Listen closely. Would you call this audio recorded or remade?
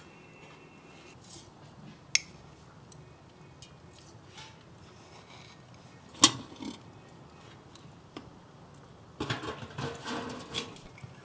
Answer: recorded